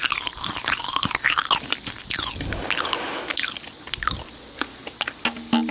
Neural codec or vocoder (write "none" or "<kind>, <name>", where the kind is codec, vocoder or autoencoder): none